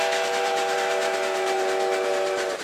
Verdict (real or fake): real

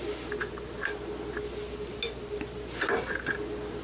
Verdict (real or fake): real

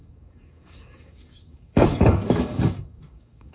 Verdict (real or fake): fake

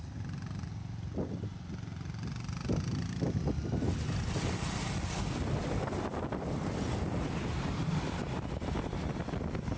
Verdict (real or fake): real